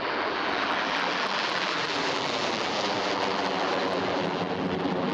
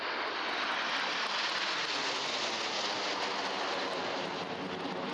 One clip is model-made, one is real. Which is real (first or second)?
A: second